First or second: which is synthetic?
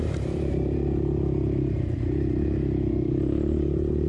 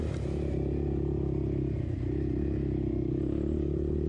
first